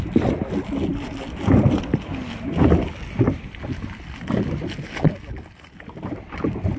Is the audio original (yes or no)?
yes